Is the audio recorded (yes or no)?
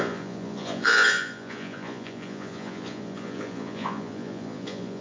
no